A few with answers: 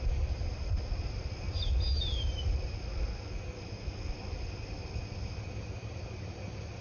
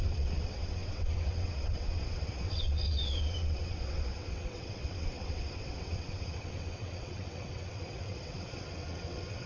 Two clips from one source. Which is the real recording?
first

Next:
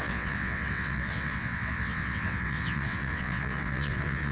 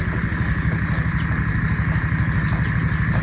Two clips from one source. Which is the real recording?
second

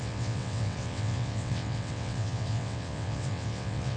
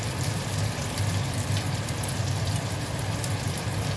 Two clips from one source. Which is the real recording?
second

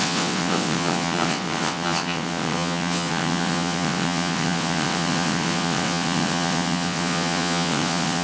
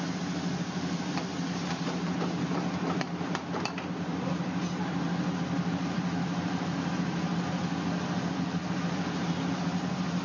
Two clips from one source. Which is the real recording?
second